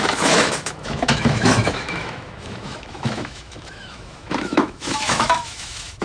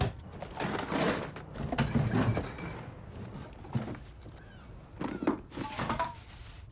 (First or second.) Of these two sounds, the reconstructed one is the first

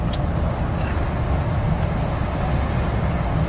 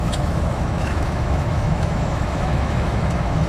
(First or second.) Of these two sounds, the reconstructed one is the second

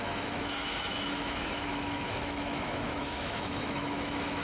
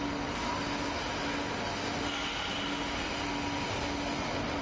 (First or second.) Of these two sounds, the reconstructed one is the first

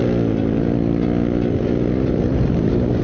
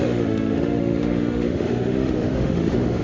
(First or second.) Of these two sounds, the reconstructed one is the second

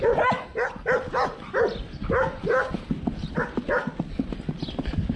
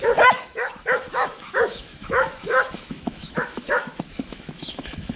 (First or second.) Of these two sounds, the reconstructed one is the second